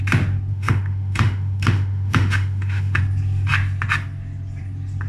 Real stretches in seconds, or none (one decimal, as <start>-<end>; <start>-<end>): 0.0-0.5; 3.0-5.1

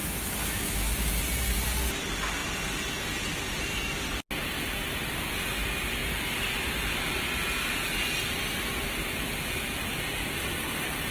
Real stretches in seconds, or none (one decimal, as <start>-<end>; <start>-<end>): 1.2-11.1

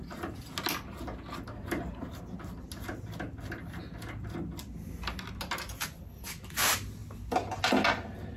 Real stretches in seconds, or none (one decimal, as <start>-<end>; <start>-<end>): 0.0-8.4

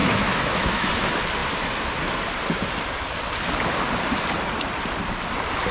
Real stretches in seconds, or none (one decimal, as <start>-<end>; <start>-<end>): 0.9-5.7

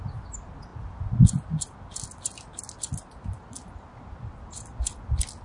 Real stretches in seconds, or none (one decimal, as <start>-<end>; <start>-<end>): 0.0-5.4

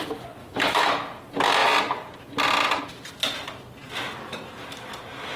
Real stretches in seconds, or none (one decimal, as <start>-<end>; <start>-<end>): 0.0-0.4; 0.9-5.4